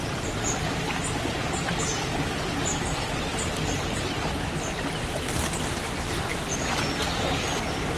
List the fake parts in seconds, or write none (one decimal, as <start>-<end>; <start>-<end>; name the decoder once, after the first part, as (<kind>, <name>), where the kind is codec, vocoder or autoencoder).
6.3-7.1 (vocoder, BigVGAN v2)

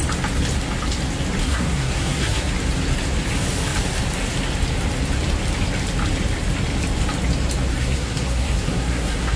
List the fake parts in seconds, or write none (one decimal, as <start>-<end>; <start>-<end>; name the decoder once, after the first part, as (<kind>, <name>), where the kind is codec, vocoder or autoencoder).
1.4-2.5 (codec, SNAC); 7.7-9.4

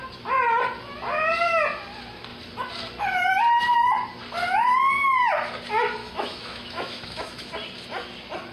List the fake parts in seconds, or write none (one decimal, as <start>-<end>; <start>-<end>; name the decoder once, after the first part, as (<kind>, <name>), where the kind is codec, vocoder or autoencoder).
6.0-7.5 (autoencoder, DAC-VAE)

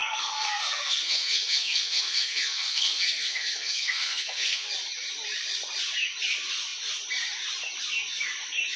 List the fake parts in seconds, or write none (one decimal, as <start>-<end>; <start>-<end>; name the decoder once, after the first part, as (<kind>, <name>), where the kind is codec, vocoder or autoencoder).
0.0-4.7 (codec, SNAC)

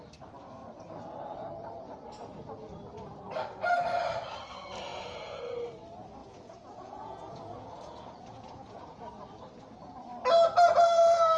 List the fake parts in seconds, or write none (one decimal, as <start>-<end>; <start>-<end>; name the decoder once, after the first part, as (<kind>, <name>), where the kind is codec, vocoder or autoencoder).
4.9-5.4 (vocoder, Vocos); 6.2-9.0